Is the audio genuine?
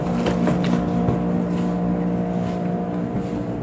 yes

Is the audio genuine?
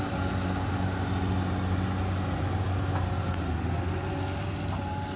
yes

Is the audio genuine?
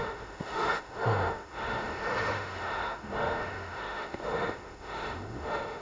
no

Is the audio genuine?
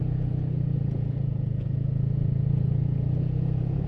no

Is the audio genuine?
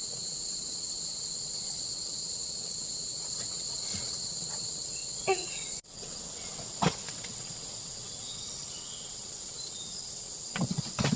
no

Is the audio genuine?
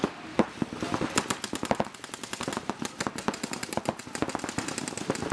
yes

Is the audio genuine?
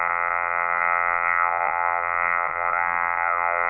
no